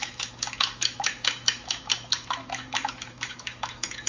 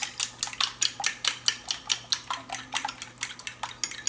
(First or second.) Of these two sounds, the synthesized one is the first